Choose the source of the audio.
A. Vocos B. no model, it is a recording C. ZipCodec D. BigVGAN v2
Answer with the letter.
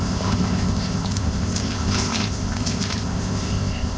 C